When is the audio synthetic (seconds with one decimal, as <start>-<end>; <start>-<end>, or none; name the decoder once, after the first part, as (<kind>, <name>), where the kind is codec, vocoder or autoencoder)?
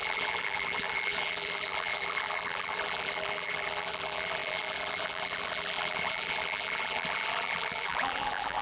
0.0-8.6 (vocoder, BigVGAN v2)